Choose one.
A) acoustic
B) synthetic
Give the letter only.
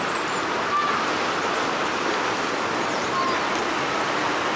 A